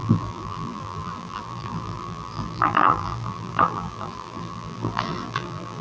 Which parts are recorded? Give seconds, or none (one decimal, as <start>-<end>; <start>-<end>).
none